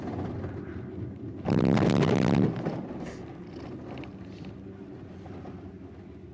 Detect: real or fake real